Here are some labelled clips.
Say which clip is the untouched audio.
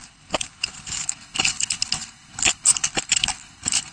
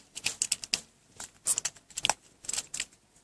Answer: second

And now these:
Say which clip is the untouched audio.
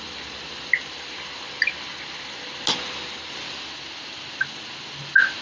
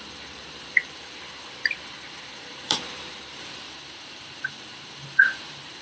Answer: first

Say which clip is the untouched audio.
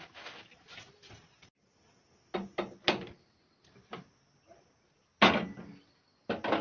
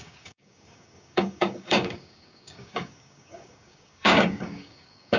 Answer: first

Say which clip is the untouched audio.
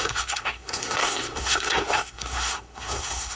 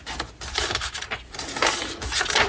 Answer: second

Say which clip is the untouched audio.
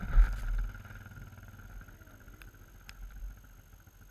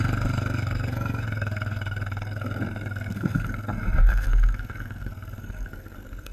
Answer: first